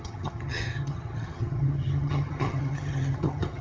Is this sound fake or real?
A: fake